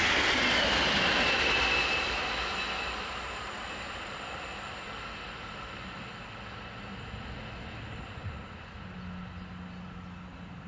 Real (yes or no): yes